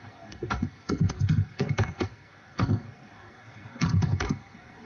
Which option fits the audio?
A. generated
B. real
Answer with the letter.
A